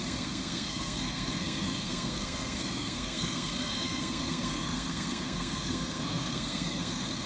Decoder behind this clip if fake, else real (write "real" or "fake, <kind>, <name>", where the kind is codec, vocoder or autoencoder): fake, codec, SNAC